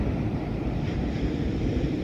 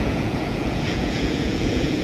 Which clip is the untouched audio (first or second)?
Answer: first